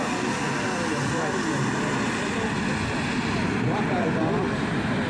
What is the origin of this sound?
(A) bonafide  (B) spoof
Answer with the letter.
A